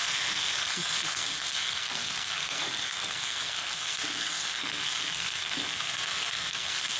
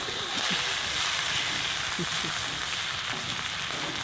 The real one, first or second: second